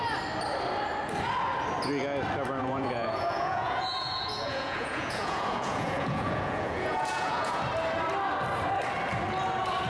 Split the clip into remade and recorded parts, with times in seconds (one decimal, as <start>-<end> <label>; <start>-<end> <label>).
0.0-2.6 recorded; 2.6-7.6 remade; 7.6-9.9 recorded